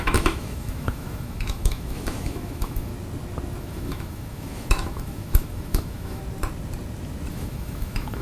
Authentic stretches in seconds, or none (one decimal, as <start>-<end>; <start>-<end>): 2.9-3.6; 6.2-7.3

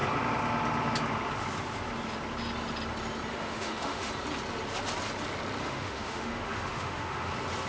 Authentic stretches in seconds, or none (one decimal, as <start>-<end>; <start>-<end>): 0.0-3.3; 4.1-5.6; 7.3-7.7

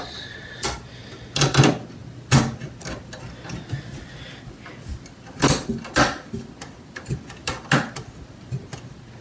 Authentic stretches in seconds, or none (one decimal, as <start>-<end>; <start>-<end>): 0.0-9.2

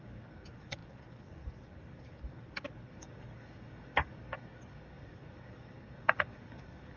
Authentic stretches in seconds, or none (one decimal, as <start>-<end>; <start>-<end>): none